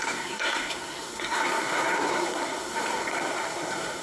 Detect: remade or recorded remade